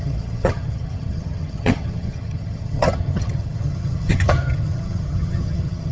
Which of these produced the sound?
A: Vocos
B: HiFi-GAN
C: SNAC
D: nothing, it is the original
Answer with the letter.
B